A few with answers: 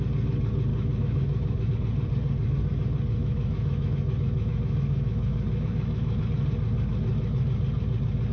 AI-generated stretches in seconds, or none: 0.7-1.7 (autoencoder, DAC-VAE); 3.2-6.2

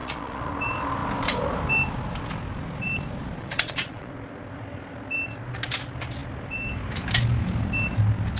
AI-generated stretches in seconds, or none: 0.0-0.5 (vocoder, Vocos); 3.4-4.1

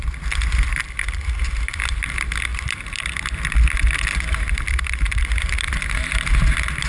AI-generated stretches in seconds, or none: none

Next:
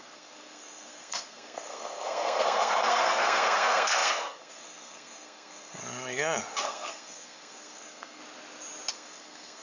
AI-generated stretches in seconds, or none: 0.0-5.8 (codec, SNAC); 6.5-8.2; 8.9-9.6

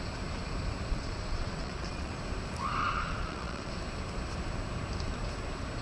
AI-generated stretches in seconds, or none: 0.9-2.1 (vocoder, Vocos); 2.8-3.7

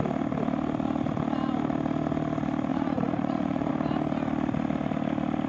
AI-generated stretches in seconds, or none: 2.7-3.7 (vocoder, Vocos)